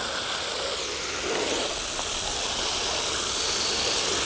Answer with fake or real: real